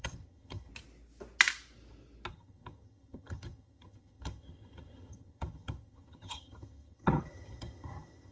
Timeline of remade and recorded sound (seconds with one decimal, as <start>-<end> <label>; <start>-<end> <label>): 0.0-0.7 remade; 0.7-2.3 recorded; 2.3-8.3 remade